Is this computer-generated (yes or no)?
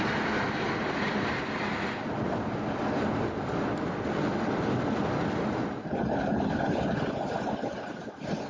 no